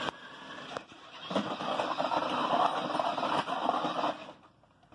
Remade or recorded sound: recorded